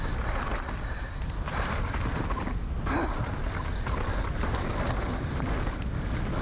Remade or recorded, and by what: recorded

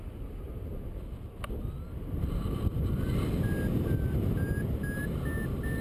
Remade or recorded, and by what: recorded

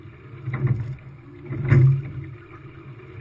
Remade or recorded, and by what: recorded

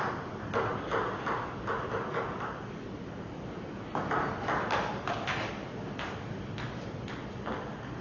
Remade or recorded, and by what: recorded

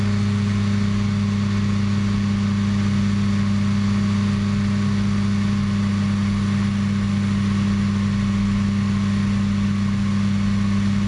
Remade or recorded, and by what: recorded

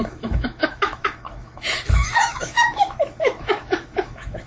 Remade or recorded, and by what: remade, autoencoder, DAC-VAE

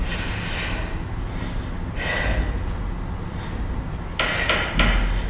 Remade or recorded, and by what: recorded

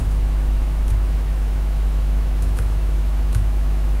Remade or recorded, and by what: remade, autoencoder, DAC-VAE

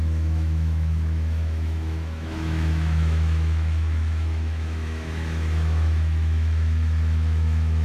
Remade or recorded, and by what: remade, autoencoder, DAC-VAE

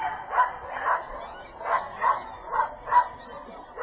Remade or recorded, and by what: recorded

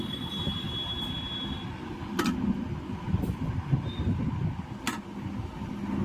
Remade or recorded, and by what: recorded